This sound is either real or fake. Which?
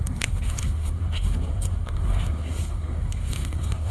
fake